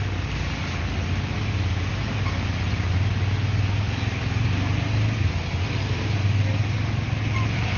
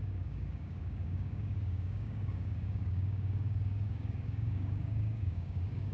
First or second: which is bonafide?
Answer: first